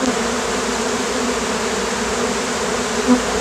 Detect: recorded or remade recorded